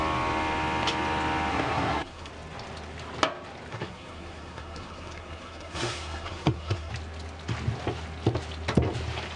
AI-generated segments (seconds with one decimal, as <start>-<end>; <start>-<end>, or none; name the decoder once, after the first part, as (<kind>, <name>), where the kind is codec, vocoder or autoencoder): 1.5-2.3 (codec, SNAC); 3.7-6.9